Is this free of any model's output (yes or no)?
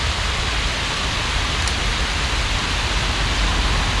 yes